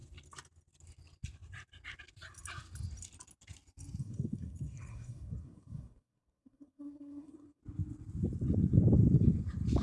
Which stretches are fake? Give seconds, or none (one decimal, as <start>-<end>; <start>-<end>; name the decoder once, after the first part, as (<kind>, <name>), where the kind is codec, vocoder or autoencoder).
4.0-7.6 (codec, SNAC)